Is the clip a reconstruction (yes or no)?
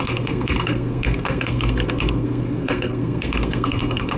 yes